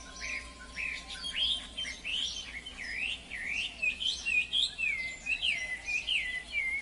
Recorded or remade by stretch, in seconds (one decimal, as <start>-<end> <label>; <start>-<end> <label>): 0.0-4.4 remade; 4.4-5.0 recorded; 5.0-6.8 remade